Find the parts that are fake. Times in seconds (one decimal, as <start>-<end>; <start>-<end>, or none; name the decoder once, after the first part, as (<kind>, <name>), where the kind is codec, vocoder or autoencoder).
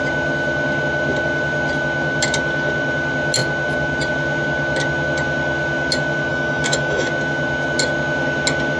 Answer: 6.3-7.1 (autoencoder, DAC-VAE)